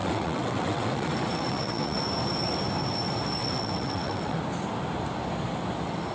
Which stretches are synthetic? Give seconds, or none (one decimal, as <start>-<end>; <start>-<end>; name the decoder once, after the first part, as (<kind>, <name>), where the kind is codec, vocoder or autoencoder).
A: 0.0-2.0 (vocoder, WaveNeXt); 3.4-4.4